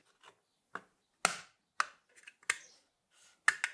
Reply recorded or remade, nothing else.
recorded